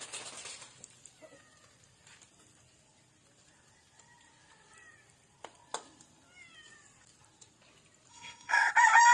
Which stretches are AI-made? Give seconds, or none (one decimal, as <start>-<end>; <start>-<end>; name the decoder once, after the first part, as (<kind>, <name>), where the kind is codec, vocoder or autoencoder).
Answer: 8.1-8.7 (codec, SNAC)